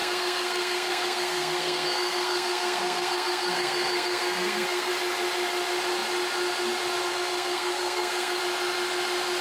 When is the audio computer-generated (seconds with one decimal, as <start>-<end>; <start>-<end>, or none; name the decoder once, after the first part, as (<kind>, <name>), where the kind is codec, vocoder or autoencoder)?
0.0-4.9 (codec, SNAC); 7.1-8.4